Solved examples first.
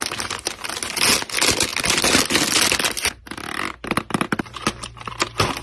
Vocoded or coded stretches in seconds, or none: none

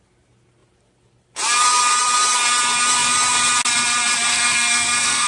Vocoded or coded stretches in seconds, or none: 4.3-5.3

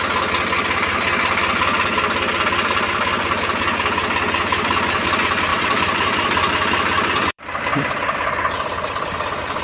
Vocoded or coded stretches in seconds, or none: 5.5-8.5